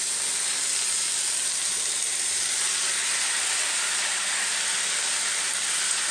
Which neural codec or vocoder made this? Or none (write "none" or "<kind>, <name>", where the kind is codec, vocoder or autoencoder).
none